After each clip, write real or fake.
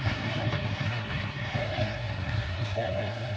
fake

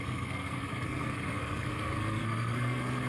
fake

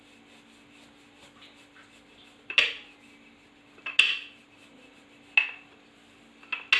real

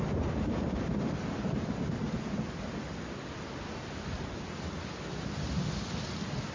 real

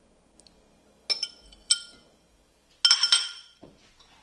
real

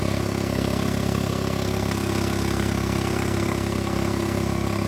fake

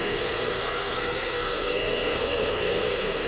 fake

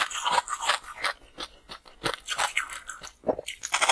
real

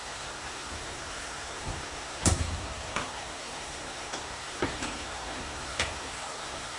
fake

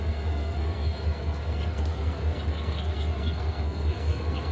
fake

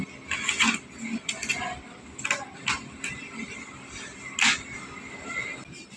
real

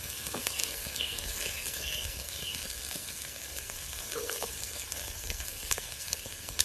fake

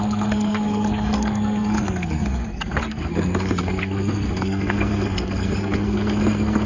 fake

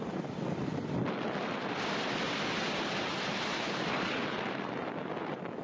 real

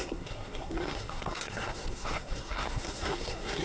fake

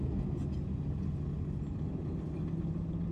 real